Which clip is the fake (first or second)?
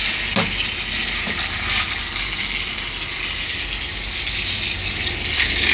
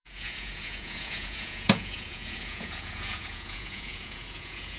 second